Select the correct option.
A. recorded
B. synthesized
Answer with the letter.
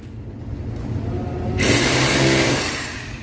A